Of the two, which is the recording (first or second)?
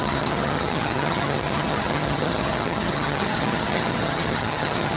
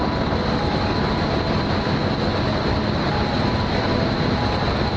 second